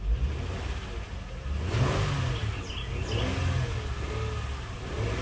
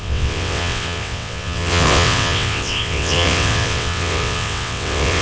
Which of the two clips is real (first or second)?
first